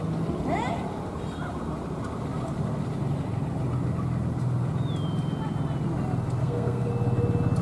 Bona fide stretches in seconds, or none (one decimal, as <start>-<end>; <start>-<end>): 0.0-6.4; 6.9-7.6